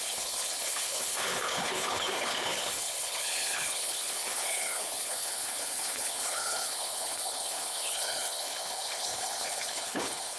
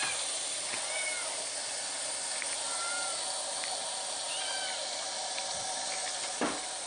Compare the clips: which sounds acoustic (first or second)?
second